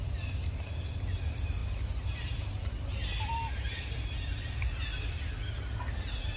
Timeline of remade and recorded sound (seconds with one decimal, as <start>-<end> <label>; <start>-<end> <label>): 0.0-6.4 recorded